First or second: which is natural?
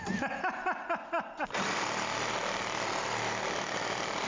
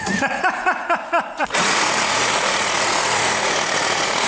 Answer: first